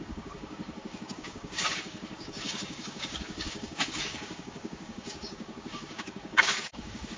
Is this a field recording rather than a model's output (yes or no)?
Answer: no